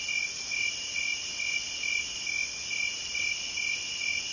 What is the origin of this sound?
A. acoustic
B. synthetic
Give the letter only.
A